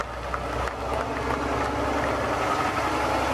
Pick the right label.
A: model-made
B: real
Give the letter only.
B